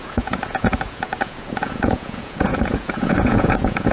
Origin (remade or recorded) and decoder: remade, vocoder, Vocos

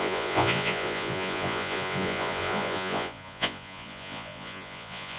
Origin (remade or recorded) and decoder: remade, vocoder, Vocos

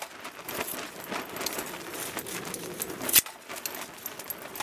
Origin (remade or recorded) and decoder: recorded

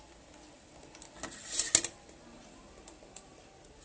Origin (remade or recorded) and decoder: recorded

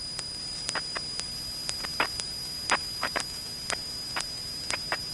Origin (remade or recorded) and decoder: recorded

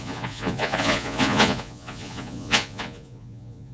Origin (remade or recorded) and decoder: remade, vocoder, Vocos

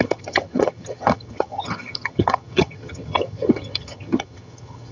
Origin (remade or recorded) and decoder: remade, vocoder, HiFi-GAN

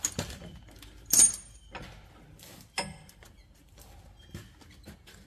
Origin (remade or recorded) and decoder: recorded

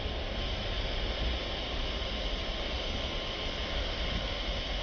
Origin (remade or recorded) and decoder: recorded